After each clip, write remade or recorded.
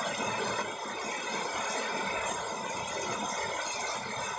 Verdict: recorded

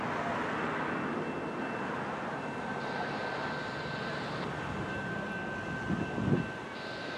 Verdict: recorded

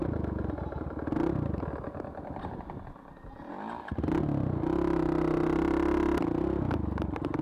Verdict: recorded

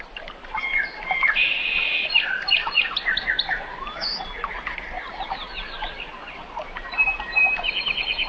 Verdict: recorded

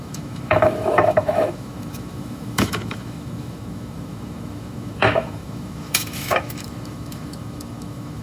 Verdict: remade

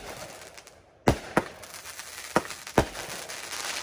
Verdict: recorded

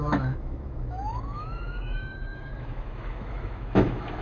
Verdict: remade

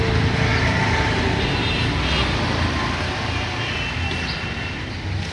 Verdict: recorded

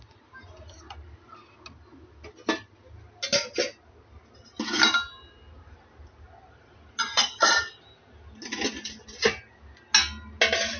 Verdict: recorded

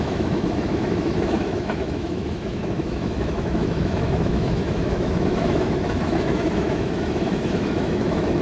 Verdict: remade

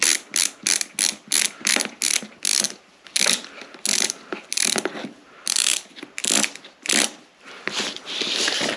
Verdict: recorded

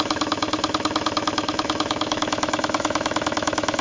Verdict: remade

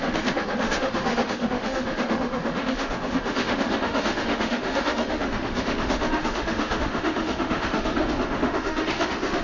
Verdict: remade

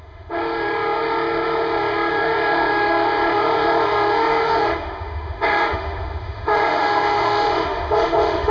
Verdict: remade